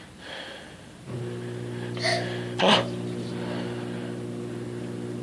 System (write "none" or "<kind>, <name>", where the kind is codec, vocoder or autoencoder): vocoder, BigVGAN v2